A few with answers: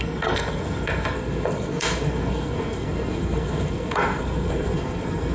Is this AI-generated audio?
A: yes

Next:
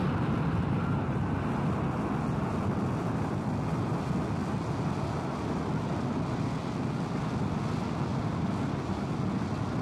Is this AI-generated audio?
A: no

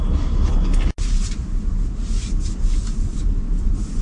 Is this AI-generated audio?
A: no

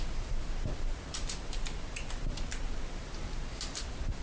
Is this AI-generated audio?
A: no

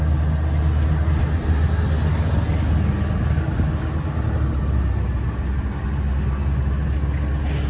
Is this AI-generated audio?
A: no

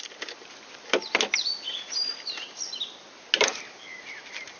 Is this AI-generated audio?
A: no